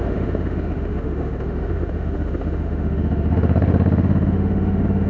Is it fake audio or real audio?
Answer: fake